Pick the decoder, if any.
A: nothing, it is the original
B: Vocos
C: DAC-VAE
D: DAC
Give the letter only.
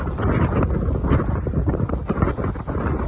A